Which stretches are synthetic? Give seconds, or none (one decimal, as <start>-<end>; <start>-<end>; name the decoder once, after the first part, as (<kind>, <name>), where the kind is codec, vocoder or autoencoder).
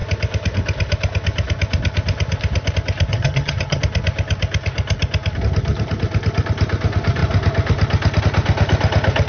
3.1-3.8 (vocoder, HiFi-GAN)